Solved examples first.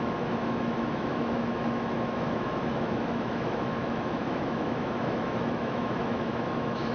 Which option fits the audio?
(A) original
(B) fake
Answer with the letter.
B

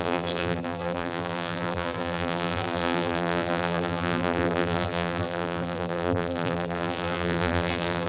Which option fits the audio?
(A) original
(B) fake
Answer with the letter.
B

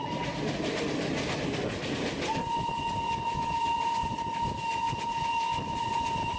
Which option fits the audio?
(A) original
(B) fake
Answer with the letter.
A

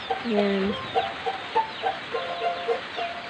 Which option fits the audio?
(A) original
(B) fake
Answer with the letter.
A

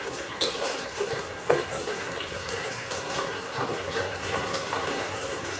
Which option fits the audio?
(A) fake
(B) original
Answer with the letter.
A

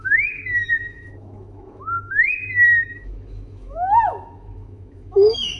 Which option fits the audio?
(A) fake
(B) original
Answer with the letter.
A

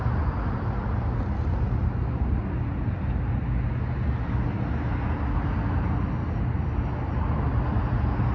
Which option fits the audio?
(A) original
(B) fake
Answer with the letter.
A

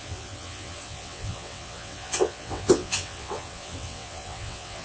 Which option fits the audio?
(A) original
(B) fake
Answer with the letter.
B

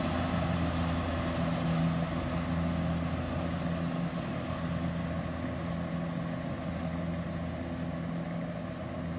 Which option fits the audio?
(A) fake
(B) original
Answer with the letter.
B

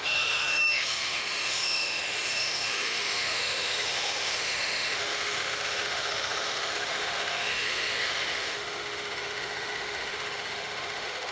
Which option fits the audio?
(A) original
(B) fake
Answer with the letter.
B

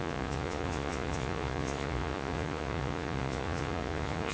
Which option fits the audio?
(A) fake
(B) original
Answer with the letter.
A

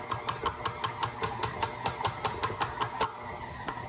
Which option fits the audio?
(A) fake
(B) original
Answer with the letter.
B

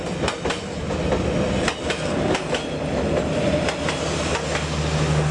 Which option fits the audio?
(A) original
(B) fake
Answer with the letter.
A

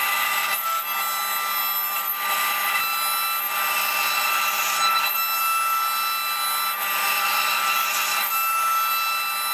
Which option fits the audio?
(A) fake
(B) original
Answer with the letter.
B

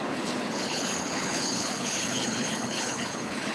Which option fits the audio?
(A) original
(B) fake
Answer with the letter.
B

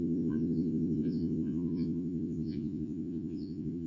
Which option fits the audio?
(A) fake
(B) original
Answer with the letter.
A